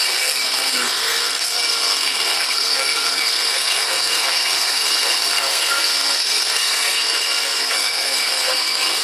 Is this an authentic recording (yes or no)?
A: no